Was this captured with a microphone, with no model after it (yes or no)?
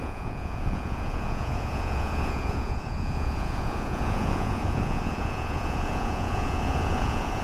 no